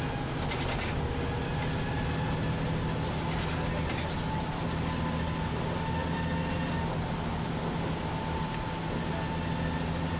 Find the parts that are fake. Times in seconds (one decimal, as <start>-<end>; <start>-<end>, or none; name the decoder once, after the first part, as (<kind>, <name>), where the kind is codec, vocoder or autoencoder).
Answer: 6.0-6.5 (vocoder, BigVGAN v2)